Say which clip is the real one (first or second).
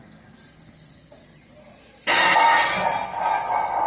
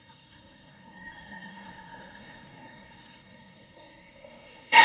first